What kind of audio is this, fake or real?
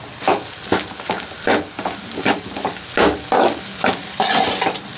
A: real